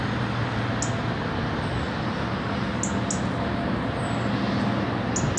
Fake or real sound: real